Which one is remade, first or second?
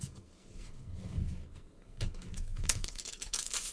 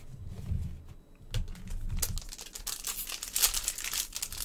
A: first